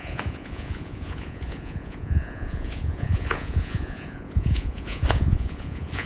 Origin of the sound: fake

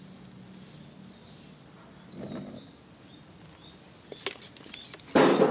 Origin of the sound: real